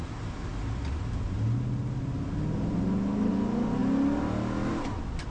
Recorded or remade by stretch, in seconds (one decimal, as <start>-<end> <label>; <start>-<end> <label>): 0.0-5.3 recorded